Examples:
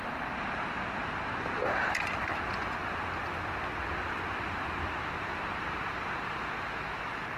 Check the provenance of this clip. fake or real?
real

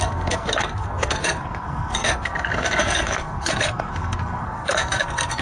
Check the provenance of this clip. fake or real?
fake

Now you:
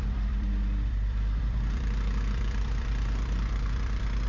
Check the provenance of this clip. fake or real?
fake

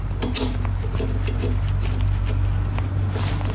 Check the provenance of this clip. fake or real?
real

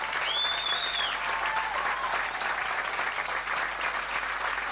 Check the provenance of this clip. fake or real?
real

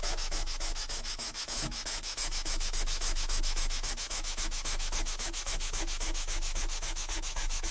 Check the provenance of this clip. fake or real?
fake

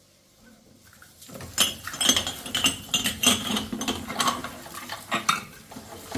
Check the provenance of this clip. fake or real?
real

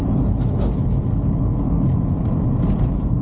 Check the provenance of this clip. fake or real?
real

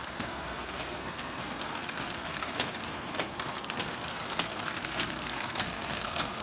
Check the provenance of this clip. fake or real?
fake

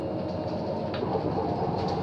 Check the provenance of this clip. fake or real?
real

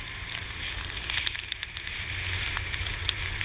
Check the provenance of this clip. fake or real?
real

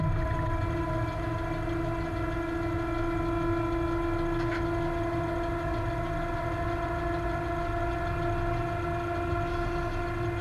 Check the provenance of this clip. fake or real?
real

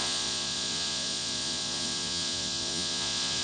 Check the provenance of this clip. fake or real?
fake